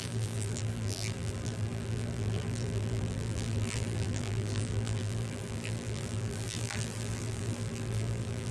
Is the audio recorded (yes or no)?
no